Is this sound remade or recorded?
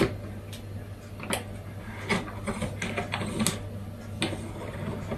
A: recorded